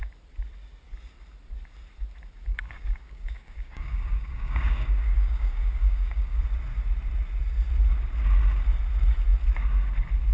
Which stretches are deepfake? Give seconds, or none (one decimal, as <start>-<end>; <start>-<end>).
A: 2.5-6.4